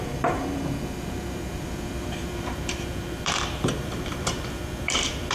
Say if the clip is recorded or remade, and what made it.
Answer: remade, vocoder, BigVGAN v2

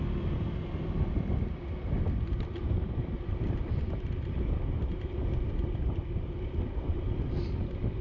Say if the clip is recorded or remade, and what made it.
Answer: remade, vocoder, BigVGAN v2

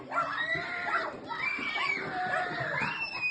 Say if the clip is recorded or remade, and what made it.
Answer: remade, vocoder, BigVGAN v2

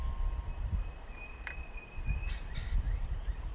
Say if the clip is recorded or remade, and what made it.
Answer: recorded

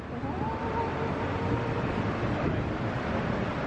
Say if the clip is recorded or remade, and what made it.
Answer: recorded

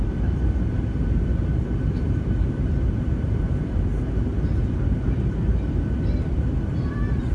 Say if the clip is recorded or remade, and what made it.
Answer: remade, vocoder, BigVGAN v2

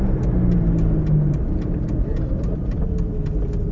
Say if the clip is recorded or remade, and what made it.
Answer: recorded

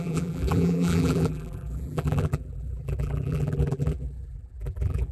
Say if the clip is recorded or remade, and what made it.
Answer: remade, vocoder, BigVGAN v2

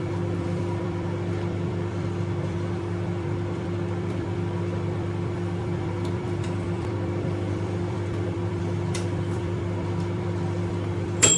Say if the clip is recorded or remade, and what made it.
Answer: remade, vocoder, BigVGAN v2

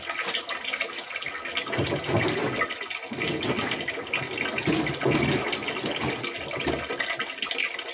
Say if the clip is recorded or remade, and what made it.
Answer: recorded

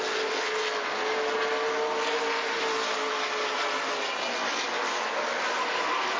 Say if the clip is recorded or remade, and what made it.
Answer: recorded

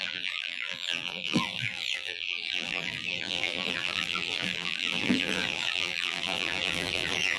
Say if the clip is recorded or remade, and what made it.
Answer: remade, vocoder, BigVGAN v2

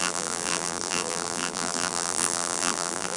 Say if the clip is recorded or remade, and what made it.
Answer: remade, vocoder, BigVGAN v2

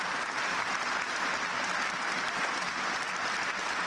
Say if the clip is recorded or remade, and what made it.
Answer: recorded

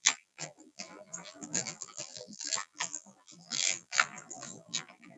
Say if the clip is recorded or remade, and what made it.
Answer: remade, vocoder, BigVGAN v2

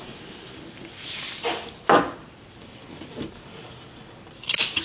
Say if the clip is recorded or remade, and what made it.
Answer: remade, vocoder, BigVGAN v2